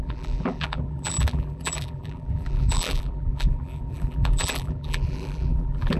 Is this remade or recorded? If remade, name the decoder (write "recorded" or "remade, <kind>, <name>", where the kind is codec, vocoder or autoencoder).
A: remade, vocoder, BigVGAN v2